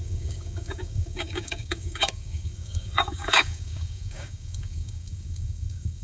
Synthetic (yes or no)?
yes